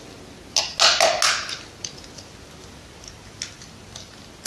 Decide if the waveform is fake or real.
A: real